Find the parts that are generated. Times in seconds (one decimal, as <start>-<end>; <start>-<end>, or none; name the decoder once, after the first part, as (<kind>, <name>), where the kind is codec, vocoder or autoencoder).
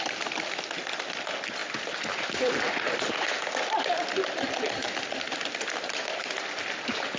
none